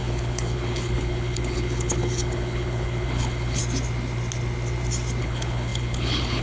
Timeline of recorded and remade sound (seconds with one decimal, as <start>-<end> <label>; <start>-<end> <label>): 0.0-3.6 remade; 3.6-5.2 recorded; 5.2-6.4 remade